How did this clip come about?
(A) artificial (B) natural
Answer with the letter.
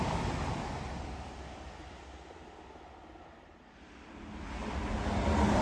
B